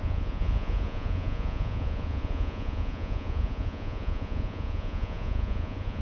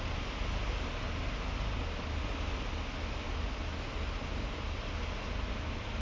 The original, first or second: second